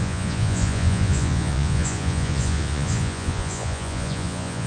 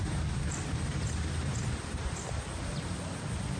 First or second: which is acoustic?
second